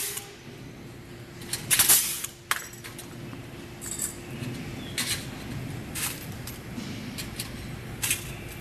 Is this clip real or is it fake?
real